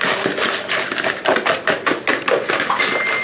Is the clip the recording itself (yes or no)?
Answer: yes